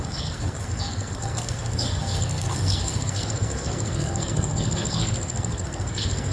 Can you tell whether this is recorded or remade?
remade